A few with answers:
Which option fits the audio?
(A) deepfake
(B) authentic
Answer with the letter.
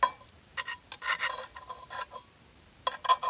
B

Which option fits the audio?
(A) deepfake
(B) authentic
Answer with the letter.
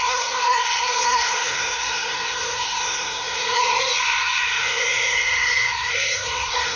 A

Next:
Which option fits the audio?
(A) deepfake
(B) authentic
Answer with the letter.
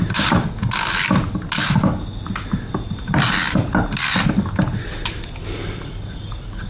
B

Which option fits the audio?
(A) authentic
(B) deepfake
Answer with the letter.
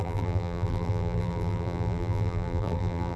B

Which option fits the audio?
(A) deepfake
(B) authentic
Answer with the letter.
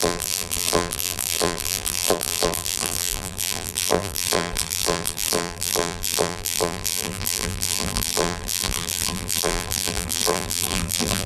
A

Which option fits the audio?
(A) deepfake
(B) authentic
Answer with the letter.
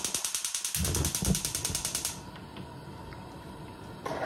B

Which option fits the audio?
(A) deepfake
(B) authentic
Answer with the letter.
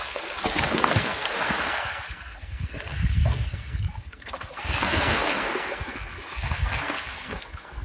A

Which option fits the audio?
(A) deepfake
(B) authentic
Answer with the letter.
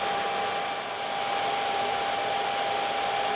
B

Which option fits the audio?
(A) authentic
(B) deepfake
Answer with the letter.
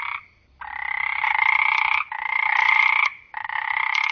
A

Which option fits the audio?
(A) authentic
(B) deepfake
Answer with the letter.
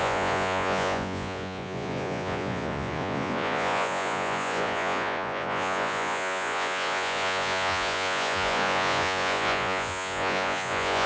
B